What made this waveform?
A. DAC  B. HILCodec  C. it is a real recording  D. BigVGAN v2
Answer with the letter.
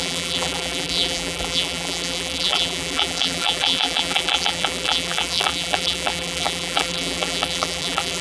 D